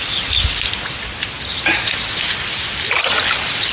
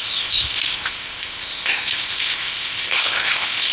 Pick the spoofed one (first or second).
second